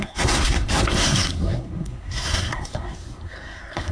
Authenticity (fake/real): fake